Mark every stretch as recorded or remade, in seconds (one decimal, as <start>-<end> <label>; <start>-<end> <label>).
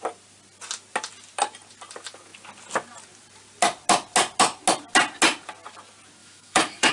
0.0-6.2 recorded; 6.2-6.9 remade